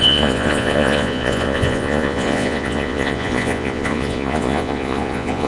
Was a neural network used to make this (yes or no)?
yes